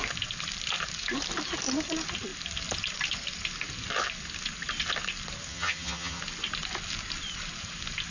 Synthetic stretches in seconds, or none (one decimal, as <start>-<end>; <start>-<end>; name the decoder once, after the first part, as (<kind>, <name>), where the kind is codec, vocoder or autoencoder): 5.5-6.2 (vocoder, HiFi-GAN)